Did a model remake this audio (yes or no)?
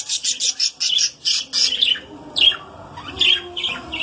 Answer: no